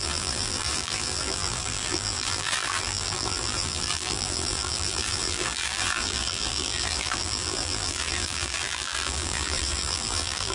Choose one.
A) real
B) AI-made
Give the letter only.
B